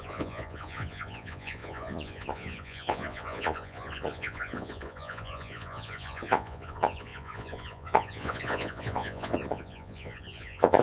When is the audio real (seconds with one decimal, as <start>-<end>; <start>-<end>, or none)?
none